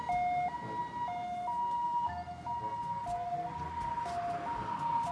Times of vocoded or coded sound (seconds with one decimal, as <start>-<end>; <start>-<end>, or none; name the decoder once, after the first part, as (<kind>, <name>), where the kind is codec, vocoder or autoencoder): none